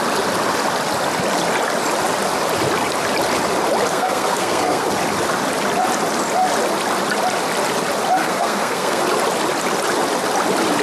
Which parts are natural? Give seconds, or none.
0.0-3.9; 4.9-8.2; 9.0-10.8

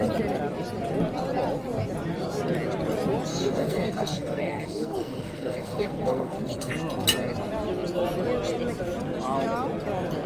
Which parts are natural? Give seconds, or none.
0.0-3.3; 6.7-10.3

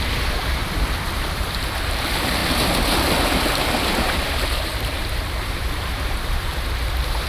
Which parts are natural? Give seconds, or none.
0.6-1.2; 2.4-3.9; 6.5-7.3

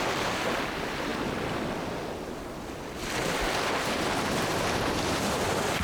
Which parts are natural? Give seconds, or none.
0.0-4.5

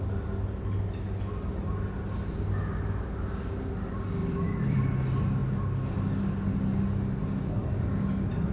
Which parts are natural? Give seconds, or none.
0.0-4.2; 4.8-8.5

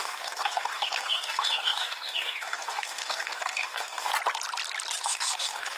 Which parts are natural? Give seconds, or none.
4.1-5.0